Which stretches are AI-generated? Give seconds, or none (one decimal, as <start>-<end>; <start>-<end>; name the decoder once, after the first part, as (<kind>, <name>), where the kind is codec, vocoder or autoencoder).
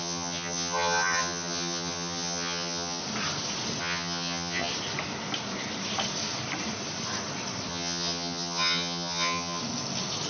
0.0-3.0 (vocoder, HiFi-GAN); 3.8-4.7; 7.7-9.6